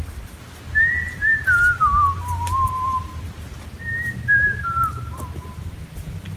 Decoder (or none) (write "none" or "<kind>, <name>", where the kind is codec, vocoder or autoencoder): none